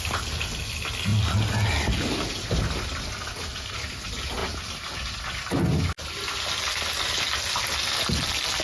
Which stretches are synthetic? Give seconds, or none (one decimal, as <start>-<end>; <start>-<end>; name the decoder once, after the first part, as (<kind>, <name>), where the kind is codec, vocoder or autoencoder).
none